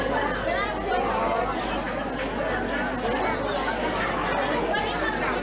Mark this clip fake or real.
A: real